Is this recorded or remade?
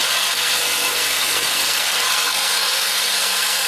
remade